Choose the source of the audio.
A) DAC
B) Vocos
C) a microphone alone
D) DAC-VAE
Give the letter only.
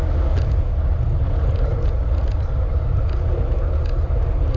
C